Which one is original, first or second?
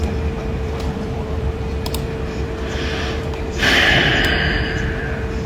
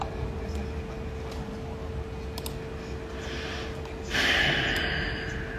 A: second